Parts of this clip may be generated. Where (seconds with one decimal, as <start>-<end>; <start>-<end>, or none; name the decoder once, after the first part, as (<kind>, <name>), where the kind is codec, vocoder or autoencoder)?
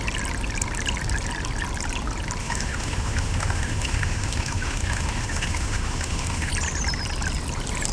2.4-6.5 (autoencoder, DAC-VAE)